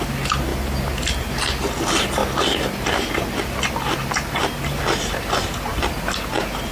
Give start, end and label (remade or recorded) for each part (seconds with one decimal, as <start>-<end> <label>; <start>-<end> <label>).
0.0-0.5 remade; 0.5-1.8 recorded; 1.8-2.2 remade; 2.2-4.1 recorded; 4.1-6.7 remade